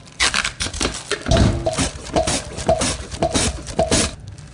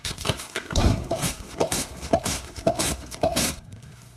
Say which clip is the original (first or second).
first